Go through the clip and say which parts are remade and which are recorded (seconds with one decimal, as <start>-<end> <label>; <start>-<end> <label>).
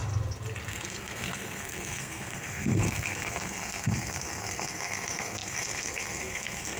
0.0-0.7 recorded; 0.7-6.8 remade